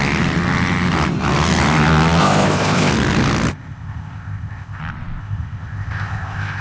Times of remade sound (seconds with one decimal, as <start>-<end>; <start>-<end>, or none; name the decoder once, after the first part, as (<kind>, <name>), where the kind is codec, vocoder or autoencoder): 2.2-2.9 (codec, ZipCodec); 3.5-4.8; 5.2-6.6